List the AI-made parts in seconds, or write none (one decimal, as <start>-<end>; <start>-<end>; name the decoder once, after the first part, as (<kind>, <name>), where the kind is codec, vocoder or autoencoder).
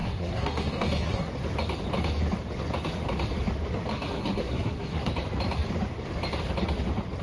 0.0-1.3 (codec, SNAC); 3.9-5.1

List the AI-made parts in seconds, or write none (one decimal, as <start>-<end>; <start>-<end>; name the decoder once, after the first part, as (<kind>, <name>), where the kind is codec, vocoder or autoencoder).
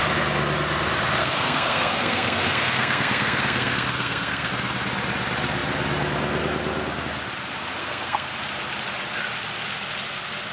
1.2-4.5 (codec, SNAC); 7.8-8.3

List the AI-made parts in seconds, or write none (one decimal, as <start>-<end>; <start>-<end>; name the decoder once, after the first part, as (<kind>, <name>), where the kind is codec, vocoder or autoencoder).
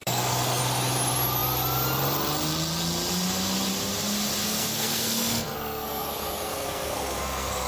0.0-0.6 (codec, SNAC); 4.4-7.7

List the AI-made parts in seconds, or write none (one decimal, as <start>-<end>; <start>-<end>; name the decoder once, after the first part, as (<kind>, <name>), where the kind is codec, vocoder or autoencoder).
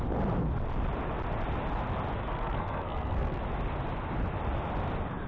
2.2-3.4 (codec, SNAC)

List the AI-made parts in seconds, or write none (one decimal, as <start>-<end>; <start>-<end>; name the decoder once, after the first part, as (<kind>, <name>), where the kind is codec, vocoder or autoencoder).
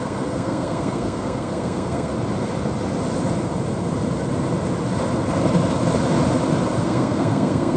0.0-2.1 (codec, SNAC); 6.8-7.8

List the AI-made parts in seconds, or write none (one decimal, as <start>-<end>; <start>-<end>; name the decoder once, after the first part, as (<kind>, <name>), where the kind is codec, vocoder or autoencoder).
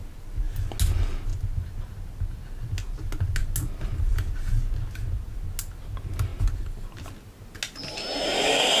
none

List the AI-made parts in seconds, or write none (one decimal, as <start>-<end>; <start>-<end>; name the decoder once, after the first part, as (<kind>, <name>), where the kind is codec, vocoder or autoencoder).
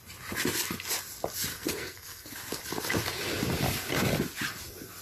1.5-2.6 (codec, SNAC)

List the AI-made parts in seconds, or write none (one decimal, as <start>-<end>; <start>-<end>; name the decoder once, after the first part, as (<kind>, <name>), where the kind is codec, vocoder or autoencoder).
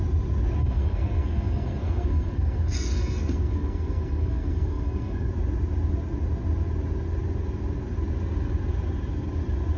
0.6-5.3 (codec, SNAC)